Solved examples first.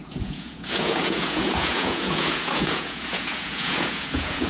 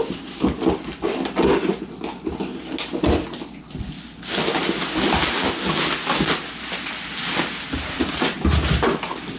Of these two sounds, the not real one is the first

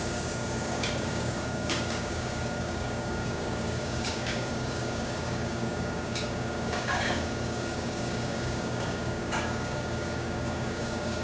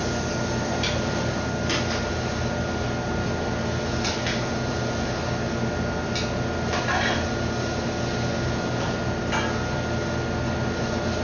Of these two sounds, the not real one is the first